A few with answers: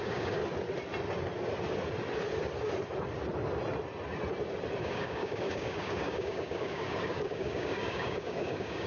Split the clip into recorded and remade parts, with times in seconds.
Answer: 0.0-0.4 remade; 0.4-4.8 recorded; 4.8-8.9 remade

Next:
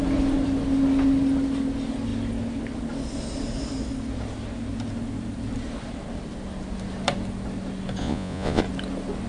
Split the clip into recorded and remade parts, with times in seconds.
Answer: 0.0-8.0 recorded; 8.0-8.6 remade; 8.6-9.3 recorded

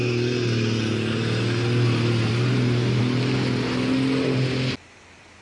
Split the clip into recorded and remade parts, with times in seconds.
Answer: 0.0-5.4 recorded